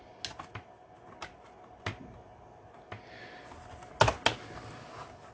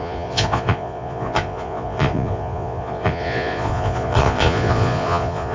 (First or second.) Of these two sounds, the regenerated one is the second